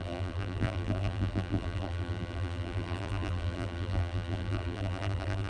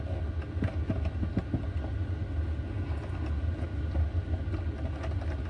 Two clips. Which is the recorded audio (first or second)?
second